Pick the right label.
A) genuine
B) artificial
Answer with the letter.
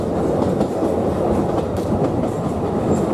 A